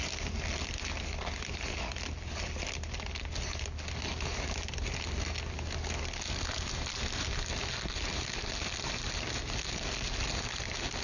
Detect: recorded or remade recorded